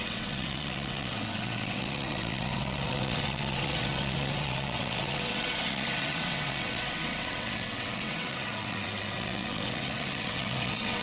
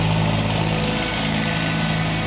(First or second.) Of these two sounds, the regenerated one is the first